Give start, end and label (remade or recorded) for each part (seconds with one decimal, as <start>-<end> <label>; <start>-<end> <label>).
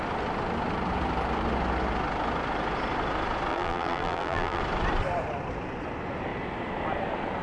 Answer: 0.0-3.5 recorded; 3.5-4.6 remade; 4.6-7.4 recorded